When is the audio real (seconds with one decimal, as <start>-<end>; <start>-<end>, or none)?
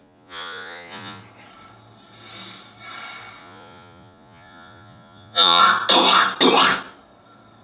1.2-3.4; 5.6-7.6